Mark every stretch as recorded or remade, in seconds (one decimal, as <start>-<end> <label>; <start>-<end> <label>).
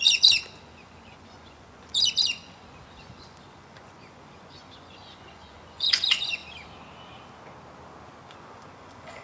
0.0-6.4 remade; 6.4-8.3 recorded; 8.3-9.2 remade